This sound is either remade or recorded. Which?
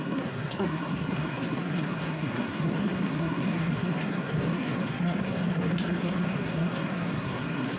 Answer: remade